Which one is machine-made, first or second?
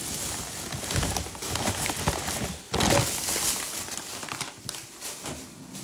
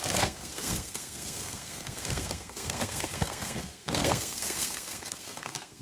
second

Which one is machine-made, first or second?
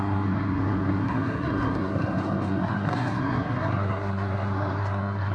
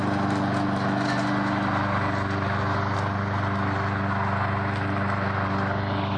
first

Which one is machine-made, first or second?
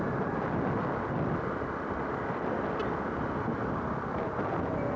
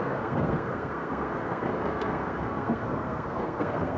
second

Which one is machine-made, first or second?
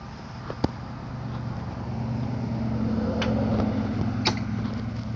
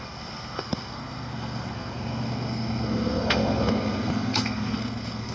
second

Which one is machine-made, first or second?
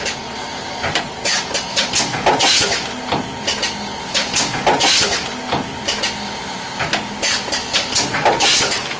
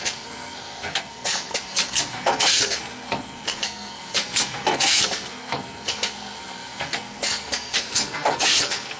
second